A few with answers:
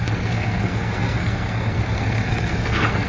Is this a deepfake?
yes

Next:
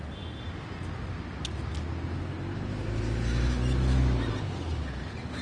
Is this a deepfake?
no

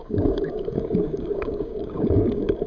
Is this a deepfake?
yes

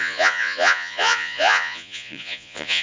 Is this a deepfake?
yes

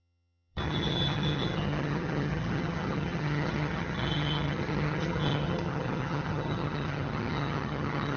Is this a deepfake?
yes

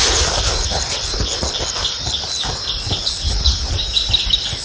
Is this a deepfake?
no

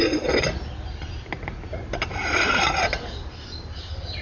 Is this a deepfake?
no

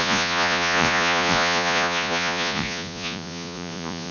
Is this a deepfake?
yes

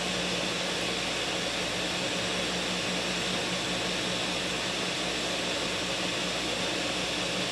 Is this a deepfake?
no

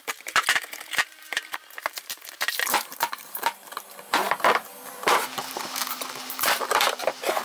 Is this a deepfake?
yes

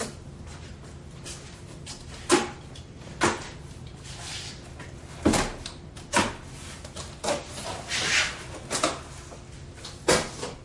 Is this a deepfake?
no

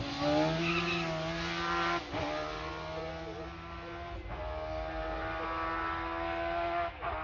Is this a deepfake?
no